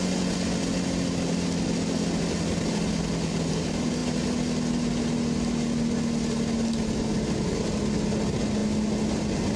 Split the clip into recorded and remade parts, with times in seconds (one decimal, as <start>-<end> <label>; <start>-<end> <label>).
0.0-9.6 recorded